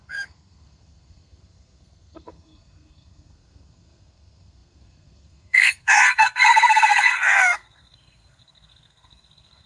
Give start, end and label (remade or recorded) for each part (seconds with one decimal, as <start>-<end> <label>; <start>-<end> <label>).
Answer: 0.0-9.7 remade